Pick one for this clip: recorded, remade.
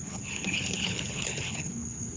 remade